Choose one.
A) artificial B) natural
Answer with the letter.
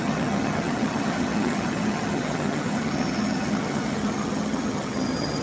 A